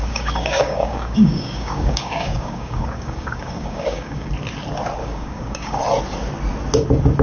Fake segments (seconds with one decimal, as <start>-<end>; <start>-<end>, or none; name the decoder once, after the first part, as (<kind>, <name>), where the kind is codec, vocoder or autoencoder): 0.0-4.3 (codec, DAC); 5.0-5.8